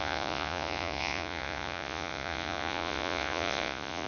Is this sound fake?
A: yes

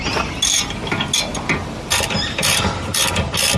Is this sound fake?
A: no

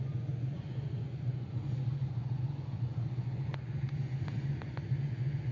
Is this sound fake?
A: yes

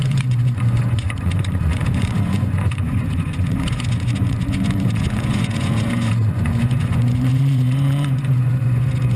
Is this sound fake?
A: yes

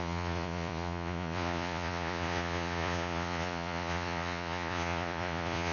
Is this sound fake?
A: yes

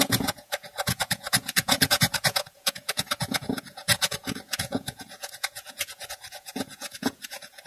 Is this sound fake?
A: yes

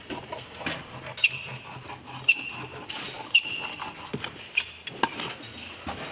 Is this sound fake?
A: no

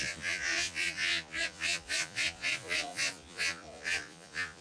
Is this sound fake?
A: yes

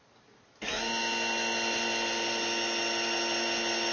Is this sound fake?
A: no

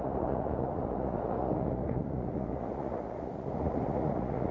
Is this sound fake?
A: yes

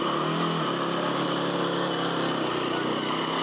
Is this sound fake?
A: no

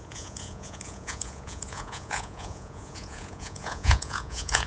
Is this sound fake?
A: yes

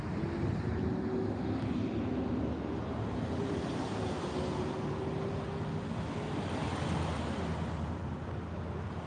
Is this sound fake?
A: no